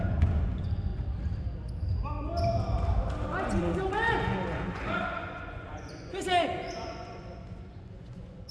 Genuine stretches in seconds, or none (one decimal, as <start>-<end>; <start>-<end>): 0.9-3.6